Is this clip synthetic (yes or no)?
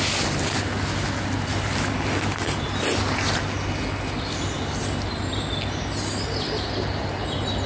no